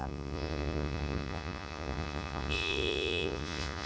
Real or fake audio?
fake